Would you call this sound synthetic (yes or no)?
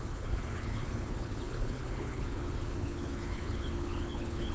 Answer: yes